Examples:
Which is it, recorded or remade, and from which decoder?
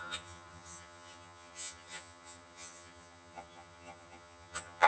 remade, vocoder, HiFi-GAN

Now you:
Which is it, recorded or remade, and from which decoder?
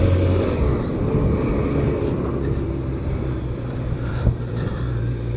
recorded